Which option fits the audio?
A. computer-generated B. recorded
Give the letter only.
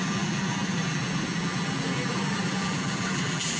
A